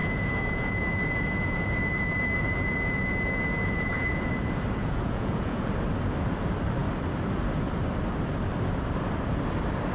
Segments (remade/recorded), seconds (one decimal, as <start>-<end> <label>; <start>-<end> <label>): 0.0-4.3 remade; 4.3-4.8 recorded; 4.8-5.7 remade; 5.7-9.9 recorded